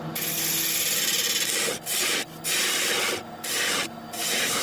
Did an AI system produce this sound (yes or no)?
no